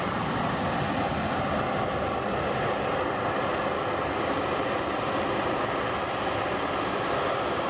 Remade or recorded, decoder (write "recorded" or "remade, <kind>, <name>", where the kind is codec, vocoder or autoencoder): recorded